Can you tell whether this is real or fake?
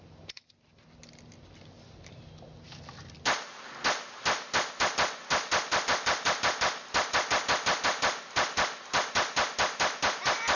real